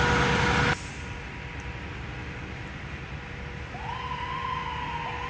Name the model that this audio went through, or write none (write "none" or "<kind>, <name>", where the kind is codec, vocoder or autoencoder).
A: none